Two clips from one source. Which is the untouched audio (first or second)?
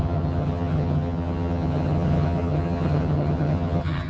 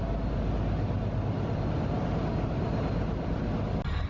second